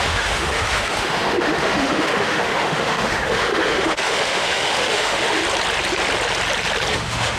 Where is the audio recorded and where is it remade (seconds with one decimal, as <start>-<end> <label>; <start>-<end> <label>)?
0.0-5.4 remade; 5.4-6.9 recorded; 6.9-7.4 remade